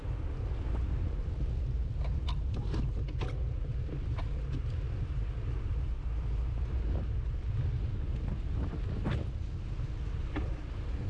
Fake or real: real